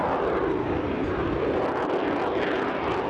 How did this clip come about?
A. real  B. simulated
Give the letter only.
A